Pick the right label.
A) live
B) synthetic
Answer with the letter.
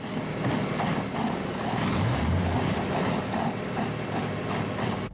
A